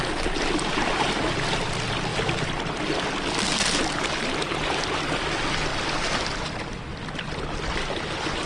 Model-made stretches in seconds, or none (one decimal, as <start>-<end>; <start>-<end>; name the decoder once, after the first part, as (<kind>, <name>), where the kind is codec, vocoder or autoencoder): 2.1-3.4 (vocoder, BigVGAN v2); 6.9-8.5